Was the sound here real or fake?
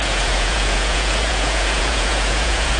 fake